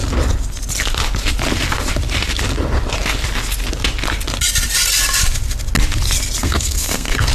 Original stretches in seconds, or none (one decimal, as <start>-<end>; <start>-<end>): 0.0-6.4